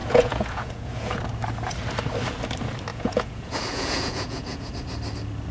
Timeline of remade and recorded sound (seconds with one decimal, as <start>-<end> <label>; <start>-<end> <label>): 0.0-1.2 remade; 1.2-2.9 recorded; 2.9-4.7 remade; 4.7-5.5 recorded